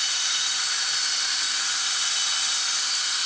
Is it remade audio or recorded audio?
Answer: recorded